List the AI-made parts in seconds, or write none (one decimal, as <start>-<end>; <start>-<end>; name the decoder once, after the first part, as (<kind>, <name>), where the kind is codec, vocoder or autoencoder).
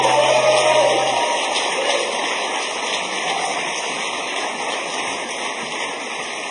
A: none